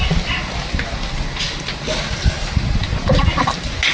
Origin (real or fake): real